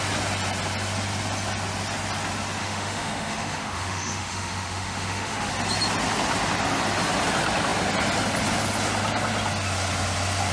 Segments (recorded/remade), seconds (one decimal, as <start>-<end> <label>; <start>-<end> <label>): 0.0-2.6 recorded; 2.6-5.5 remade; 5.5-10.5 recorded